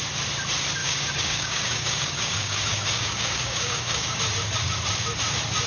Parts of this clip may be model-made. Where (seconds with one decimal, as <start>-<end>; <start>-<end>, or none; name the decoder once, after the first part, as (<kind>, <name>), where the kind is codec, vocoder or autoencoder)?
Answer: 0.8-4.2 (codec, DAC)

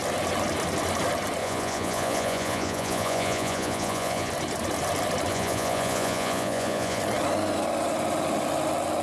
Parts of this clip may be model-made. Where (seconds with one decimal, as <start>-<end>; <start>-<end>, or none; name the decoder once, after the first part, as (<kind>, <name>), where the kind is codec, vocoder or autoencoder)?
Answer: 1.4-4.3 (vocoder, Vocos); 5.3-7.0